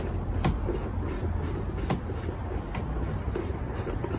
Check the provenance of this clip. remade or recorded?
recorded